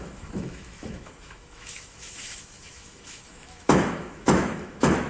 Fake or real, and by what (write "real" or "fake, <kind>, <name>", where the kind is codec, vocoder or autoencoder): fake, autoencoder, DAC-VAE